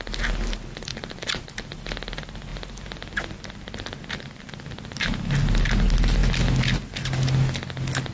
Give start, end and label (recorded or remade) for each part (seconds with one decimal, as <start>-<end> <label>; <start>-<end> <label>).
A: 0.0-0.9 recorded; 0.9-1.8 remade; 1.8-8.1 recorded